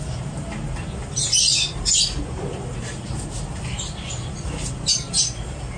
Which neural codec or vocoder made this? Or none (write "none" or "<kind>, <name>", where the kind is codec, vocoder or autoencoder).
vocoder, BigVGAN v2